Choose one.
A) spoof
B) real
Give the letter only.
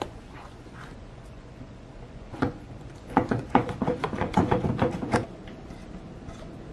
A